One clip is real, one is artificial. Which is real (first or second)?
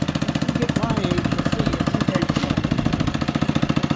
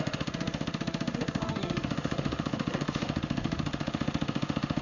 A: first